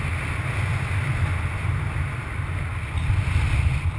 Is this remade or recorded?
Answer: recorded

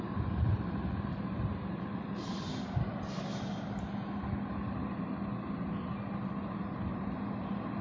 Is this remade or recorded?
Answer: recorded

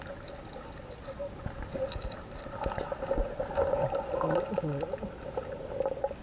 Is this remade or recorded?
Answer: recorded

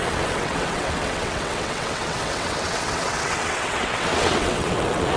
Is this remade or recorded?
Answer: remade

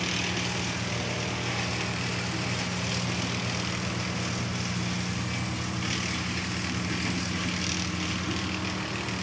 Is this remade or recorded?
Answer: recorded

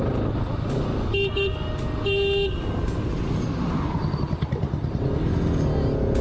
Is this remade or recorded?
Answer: recorded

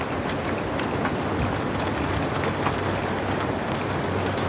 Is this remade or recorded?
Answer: recorded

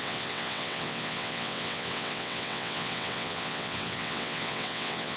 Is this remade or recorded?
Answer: remade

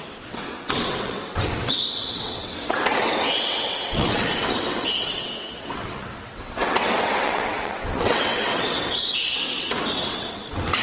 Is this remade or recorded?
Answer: remade